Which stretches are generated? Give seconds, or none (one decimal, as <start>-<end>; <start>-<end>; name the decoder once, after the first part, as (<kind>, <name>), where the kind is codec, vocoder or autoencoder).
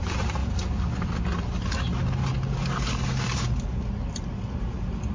none